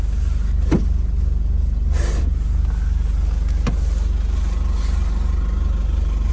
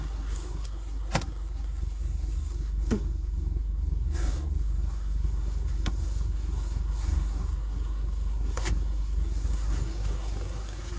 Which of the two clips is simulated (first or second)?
second